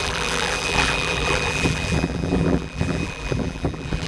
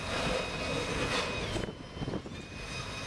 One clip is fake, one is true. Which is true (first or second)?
second